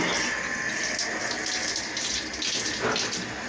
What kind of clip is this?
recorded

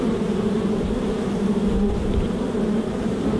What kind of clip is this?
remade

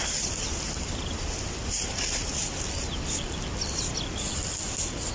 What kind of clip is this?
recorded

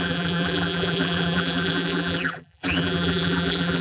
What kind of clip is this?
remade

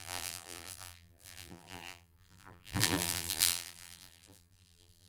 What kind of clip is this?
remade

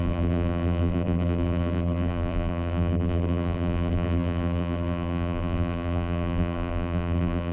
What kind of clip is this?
remade